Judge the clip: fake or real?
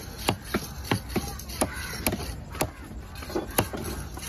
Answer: real